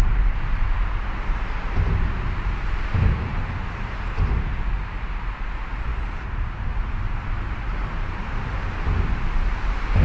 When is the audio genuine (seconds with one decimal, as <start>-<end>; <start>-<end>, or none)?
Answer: 0.0-5.9; 6.8-10.0